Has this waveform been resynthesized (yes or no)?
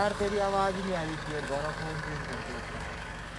yes